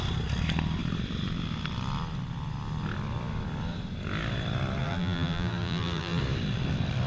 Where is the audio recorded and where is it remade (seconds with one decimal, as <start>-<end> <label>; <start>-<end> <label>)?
0.0-4.8 recorded; 4.8-6.2 remade; 6.2-7.1 recorded